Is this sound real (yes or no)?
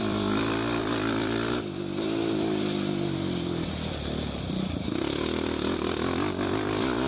no